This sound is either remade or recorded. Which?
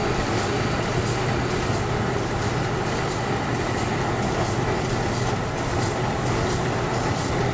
recorded